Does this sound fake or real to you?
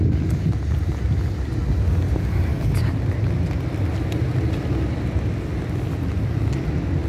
real